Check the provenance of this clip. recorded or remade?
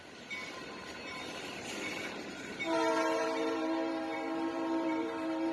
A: remade